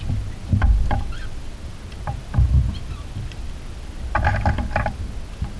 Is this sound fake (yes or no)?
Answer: no